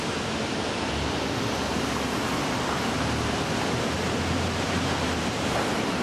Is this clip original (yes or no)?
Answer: yes